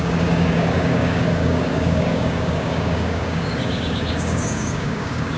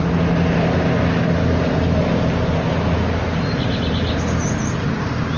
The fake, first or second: first